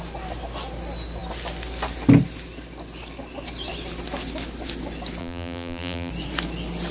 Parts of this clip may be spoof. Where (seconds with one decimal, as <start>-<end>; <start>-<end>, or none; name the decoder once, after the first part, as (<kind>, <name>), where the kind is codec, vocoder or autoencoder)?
5.2-6.1 (vocoder, BigVGAN v2)